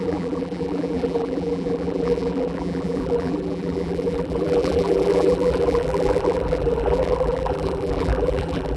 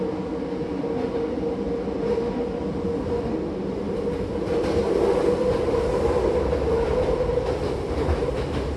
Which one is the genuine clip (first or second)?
second